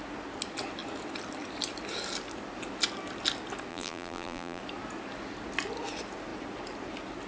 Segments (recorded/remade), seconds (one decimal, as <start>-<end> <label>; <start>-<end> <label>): 0.0-3.7 recorded; 3.7-4.6 remade; 4.6-7.3 recorded